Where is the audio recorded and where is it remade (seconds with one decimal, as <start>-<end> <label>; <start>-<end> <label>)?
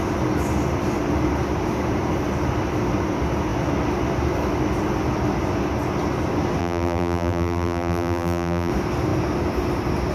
0.0-6.6 recorded; 6.6-8.7 remade; 8.7-10.1 recorded